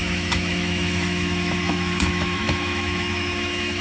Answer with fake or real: fake